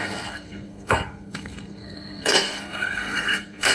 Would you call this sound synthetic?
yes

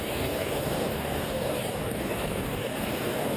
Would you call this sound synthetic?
yes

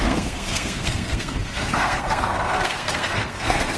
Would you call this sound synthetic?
yes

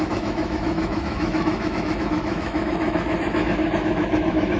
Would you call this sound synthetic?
yes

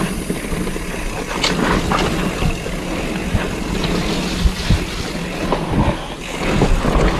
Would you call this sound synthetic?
no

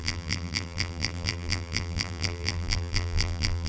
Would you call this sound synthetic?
yes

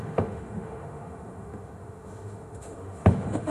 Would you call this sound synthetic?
yes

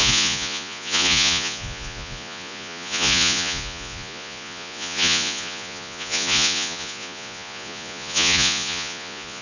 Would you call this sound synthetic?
yes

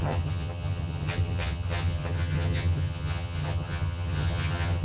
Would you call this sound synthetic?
yes